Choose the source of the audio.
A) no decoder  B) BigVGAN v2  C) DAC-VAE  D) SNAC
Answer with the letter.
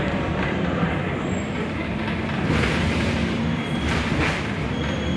B